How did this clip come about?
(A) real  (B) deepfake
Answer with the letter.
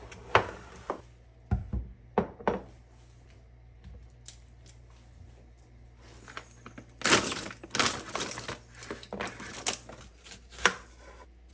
A